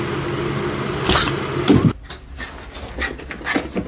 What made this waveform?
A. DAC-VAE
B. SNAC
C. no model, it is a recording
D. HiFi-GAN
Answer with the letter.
C